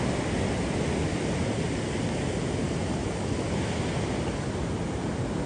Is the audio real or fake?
real